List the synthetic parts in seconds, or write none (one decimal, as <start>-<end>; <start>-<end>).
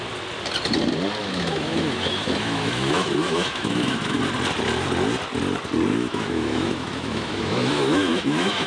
1.2-4.2; 5.9-8.7